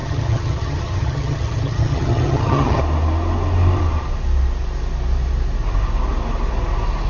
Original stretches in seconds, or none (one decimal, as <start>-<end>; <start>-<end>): 2.8-7.1